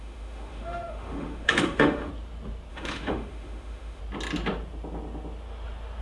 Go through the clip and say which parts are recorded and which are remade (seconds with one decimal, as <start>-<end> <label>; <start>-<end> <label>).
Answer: 0.0-2.1 remade; 2.1-2.7 recorded; 2.7-4.0 remade; 4.0-6.0 recorded